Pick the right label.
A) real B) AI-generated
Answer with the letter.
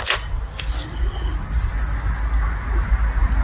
A